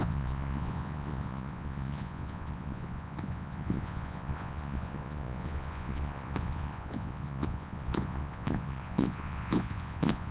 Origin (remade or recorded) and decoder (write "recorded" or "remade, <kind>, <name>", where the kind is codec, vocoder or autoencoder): remade, vocoder, Vocos